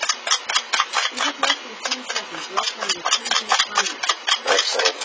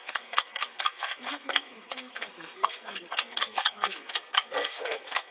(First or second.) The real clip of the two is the first